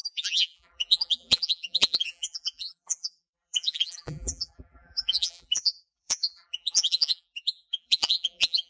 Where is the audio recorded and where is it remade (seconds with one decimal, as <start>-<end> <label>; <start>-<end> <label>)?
0.0-8.7 remade